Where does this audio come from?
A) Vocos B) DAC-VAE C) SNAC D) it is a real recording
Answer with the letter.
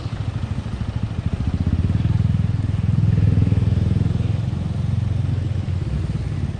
D